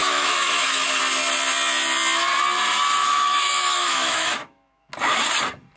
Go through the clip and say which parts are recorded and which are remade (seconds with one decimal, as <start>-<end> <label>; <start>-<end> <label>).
0.0-1.0 remade; 1.0-3.0 recorded; 3.0-4.9 remade; 4.9-5.8 recorded